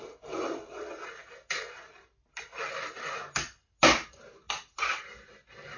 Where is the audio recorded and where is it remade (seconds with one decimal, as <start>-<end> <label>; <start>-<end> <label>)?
0.0-5.8 recorded